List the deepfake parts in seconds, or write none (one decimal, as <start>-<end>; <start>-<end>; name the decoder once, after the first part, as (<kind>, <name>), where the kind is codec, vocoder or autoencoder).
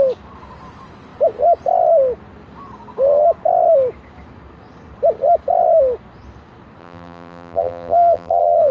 6.8-8.7 (vocoder, BigVGAN v2)